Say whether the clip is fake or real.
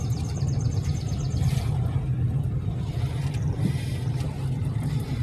fake